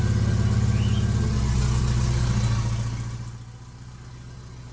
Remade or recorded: recorded